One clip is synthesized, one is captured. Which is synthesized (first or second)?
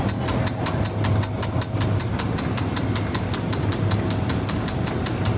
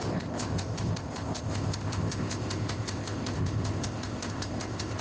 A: second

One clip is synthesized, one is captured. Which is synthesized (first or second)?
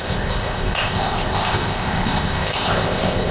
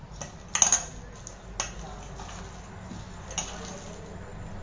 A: first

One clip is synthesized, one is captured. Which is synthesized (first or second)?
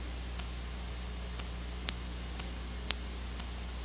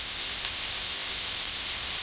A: second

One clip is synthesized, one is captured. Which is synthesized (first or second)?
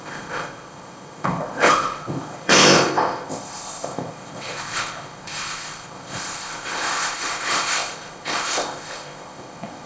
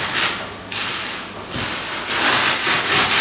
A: first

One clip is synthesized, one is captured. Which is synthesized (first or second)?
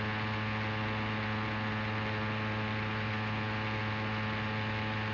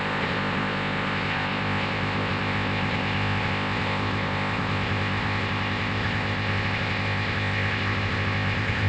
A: second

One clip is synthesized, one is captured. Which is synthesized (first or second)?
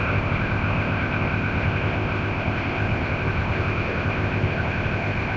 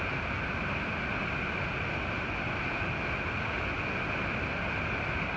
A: first